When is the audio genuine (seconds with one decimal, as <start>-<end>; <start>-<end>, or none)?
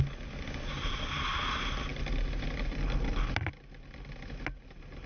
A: 0.0-5.1